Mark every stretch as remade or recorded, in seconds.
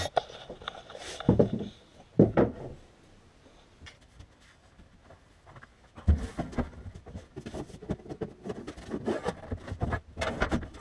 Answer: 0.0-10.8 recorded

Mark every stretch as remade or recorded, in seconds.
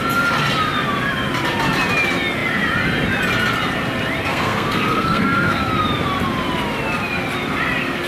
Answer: 0.0-4.2 recorded; 4.2-5.6 remade; 5.6-8.1 recorded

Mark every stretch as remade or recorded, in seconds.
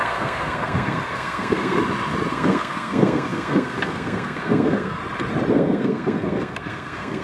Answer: 0.0-1.8 remade; 1.8-2.3 recorded; 2.3-5.0 remade; 5.0-5.5 recorded; 5.5-7.2 remade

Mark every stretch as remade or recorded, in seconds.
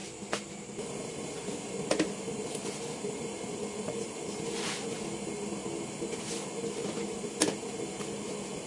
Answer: 0.0-8.7 recorded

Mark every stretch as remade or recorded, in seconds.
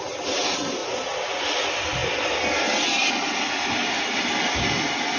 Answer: 0.0-5.2 recorded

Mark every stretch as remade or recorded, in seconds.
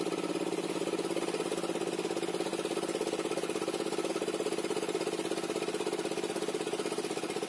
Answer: 0.0-7.5 recorded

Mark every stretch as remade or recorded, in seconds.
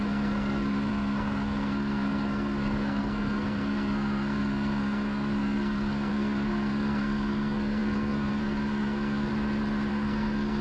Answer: 0.0-9.3 remade; 9.3-9.9 recorded; 9.9-10.6 remade